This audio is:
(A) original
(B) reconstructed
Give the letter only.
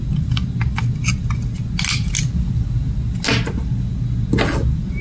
A